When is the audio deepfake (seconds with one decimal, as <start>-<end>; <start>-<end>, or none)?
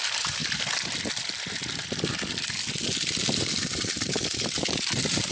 0.0-0.4; 3.6-5.3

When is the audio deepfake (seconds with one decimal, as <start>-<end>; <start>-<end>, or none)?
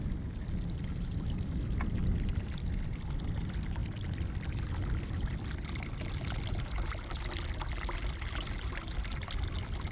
none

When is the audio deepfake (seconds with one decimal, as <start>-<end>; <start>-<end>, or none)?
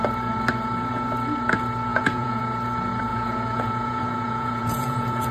1.9-2.4; 3.1-5.3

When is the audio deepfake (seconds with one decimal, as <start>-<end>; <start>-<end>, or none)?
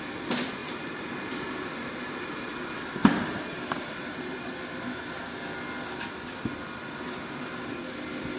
0.6-4.5